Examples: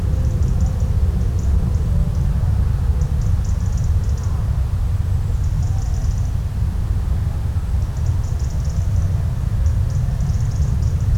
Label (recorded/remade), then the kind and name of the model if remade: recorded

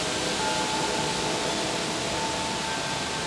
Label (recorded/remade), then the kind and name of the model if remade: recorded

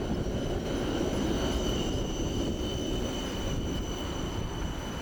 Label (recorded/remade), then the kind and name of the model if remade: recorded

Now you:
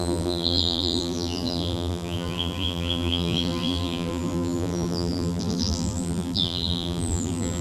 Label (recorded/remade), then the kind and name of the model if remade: remade, vocoder, BigVGAN v2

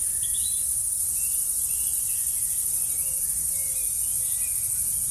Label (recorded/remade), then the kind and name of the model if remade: recorded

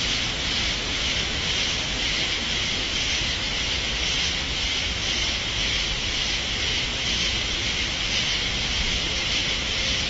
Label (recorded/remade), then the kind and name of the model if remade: recorded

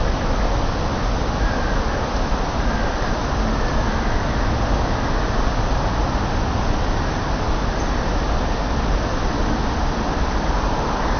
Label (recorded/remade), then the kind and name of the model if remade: recorded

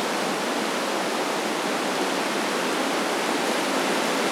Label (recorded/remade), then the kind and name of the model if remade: recorded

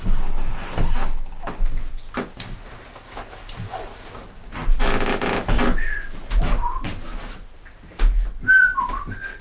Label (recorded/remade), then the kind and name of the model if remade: recorded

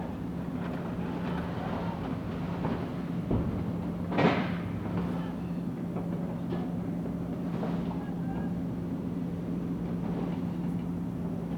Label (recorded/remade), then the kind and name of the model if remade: recorded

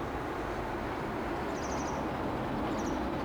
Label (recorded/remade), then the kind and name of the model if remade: recorded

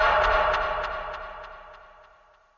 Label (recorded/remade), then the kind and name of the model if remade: remade, vocoder, BigVGAN v2